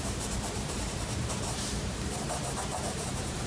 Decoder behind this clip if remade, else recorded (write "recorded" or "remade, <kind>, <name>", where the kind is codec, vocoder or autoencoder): remade, vocoder, BigVGAN v2